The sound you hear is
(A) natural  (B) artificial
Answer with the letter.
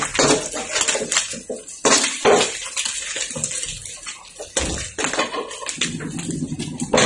A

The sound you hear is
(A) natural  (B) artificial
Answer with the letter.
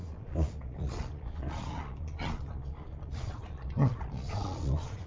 B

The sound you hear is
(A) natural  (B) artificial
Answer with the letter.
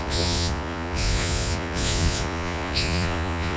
B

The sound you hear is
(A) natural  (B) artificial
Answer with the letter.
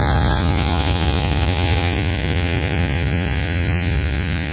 B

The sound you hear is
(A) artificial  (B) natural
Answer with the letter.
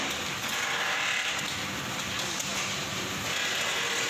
B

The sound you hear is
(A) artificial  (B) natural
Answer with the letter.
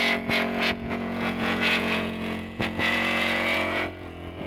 A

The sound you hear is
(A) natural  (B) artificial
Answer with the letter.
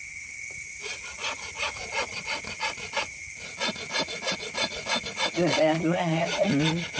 B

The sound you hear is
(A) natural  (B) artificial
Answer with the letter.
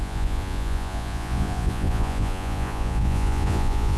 B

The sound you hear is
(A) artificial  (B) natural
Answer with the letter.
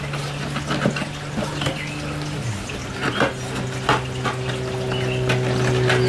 B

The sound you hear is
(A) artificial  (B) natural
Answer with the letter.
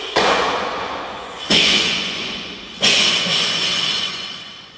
A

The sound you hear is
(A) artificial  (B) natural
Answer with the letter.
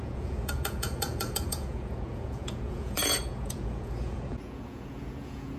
A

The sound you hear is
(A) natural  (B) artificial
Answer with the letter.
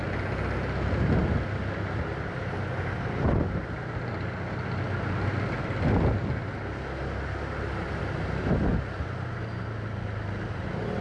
A